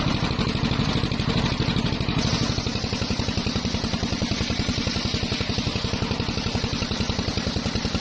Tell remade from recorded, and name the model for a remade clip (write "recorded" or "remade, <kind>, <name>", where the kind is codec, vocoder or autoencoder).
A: recorded